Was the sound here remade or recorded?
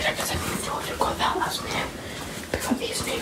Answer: recorded